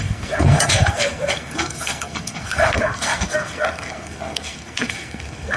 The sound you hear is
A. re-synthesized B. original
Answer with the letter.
A